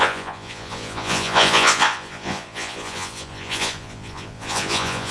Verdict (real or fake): fake